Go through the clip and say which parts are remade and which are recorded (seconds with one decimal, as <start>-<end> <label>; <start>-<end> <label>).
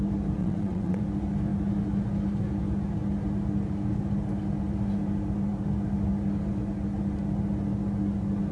0.0-0.4 recorded; 0.4-1.0 remade; 1.0-8.5 recorded